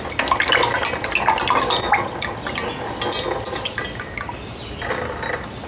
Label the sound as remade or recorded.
recorded